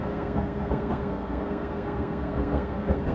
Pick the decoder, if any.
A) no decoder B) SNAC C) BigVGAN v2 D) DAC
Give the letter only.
B